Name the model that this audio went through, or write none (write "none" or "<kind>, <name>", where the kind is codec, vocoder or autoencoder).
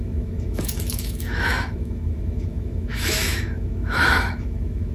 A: autoencoder, DAC-VAE